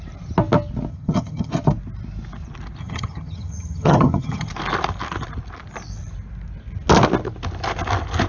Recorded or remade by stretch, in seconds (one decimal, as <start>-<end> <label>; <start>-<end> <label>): 0.0-0.9 recorded; 0.9-1.5 remade; 1.5-2.8 recorded; 2.8-4.5 remade; 4.5-8.3 recorded